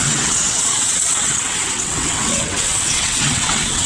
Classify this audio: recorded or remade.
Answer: remade